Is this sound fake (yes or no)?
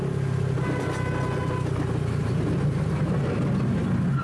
no